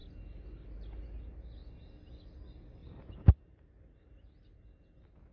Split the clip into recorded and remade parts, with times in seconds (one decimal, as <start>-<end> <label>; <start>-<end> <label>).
0.0-2.8 recorded; 2.8-4.1 remade; 4.1-5.3 recorded